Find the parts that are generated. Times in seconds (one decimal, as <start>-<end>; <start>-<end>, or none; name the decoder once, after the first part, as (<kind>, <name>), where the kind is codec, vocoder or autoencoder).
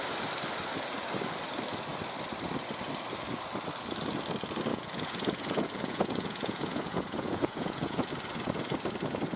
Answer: 4.7-8.1 (vocoder, Vocos)